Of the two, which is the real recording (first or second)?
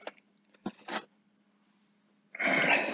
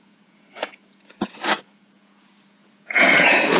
first